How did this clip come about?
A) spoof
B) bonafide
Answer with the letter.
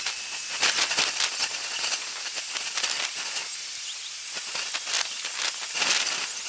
B